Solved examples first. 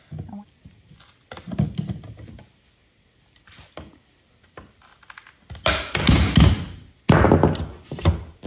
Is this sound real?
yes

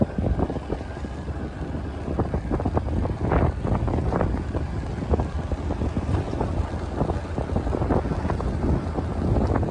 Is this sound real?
yes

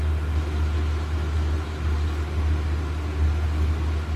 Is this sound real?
yes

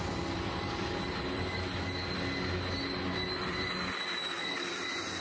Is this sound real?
yes